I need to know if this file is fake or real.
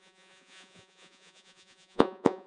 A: fake